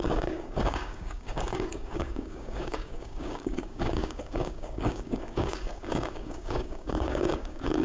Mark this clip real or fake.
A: fake